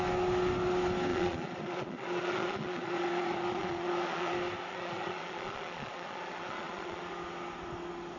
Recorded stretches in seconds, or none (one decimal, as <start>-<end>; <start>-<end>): 0.0-1.1; 4.3-4.7; 7.0-8.2